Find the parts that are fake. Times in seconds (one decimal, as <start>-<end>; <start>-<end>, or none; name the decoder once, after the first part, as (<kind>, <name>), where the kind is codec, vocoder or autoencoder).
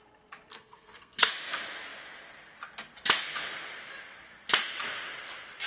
0.5-1.3 (codec, SNAC)